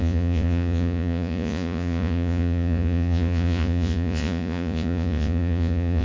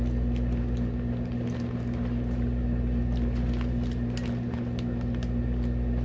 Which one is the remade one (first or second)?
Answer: first